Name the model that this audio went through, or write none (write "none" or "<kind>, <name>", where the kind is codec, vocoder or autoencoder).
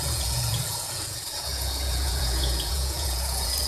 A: vocoder, Vocos